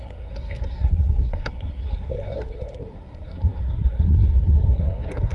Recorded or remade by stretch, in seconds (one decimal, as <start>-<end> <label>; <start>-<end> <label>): 0.0-5.3 remade